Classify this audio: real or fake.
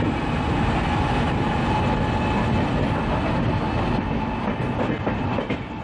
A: real